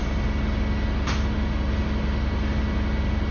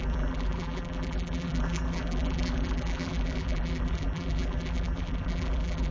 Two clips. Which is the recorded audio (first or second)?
first